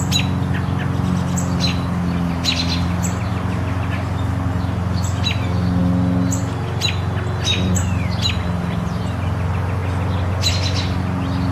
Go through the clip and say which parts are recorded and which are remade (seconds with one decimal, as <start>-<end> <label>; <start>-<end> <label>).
0.0-11.5 recorded